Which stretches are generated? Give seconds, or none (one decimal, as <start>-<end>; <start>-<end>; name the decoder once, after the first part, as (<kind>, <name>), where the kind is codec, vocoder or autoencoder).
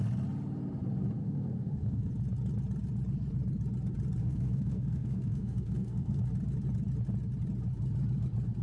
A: 1.2-2.1 (codec, SNAC); 4.2-6.2